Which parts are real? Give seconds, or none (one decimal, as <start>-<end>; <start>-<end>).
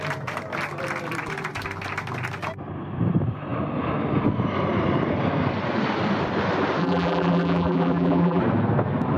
0.0-6.8; 8.4-9.2